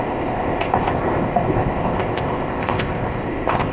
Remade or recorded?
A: remade